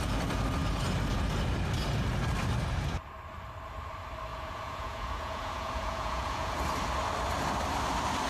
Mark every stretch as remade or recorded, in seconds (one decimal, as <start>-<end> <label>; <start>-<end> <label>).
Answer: 0.0-4.3 recorded; 4.3-6.6 remade; 6.6-8.3 recorded